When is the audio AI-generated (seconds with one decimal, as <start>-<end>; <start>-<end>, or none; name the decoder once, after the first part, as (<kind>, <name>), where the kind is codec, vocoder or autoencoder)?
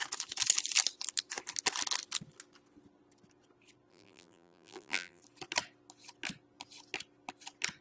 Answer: 3.9-5.2 (vocoder, BigVGAN v2)